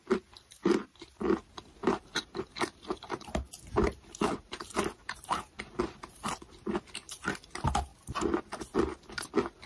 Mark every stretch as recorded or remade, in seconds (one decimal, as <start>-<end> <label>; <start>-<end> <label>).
0.0-1.8 recorded; 1.8-2.4 remade; 2.4-3.9 recorded; 3.9-6.2 remade; 6.2-9.7 recorded